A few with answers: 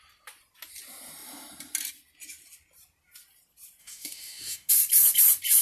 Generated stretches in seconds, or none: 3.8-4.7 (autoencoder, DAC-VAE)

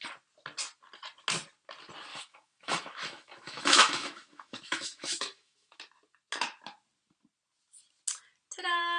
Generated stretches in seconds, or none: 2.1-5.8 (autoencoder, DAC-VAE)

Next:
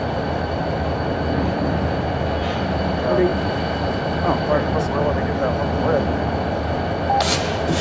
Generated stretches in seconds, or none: none

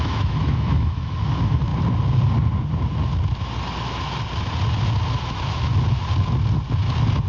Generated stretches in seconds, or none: 0.0-1.7 (autoencoder, DAC-VAE); 5.3-5.7

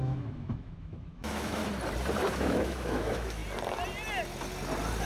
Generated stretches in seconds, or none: 0.0-1.6 (autoencoder, DAC-VAE); 2.3-3.4